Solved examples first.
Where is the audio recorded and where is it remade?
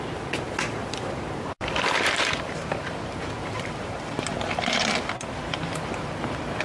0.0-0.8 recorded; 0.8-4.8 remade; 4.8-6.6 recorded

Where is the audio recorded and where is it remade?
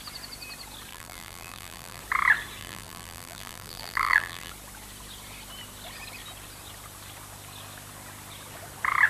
0.0-0.9 recorded; 0.9-2.0 remade; 2.0-2.6 recorded; 2.6-4.5 remade; 4.5-9.1 recorded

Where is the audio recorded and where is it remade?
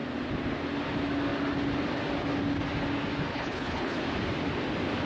0.0-3.3 recorded; 3.3-4.0 remade; 4.0-5.1 recorded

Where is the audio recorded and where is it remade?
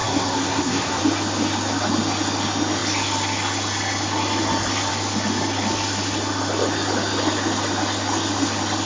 0.0-1.0 remade; 1.0-8.9 recorded